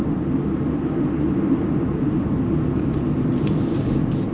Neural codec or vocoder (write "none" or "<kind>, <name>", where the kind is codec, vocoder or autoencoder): none